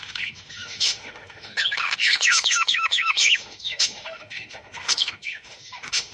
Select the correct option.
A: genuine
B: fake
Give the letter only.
B